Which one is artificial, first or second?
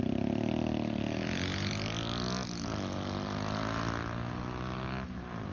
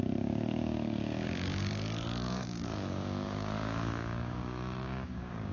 second